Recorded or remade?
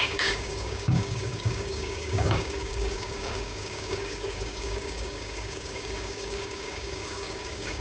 remade